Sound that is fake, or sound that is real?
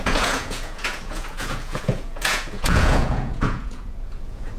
fake